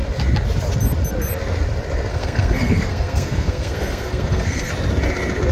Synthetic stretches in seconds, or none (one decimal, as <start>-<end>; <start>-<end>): 2.1-4.7